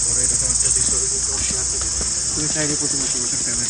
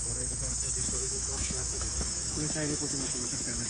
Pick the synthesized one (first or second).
second